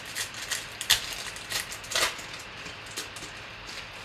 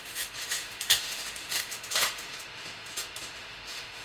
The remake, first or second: second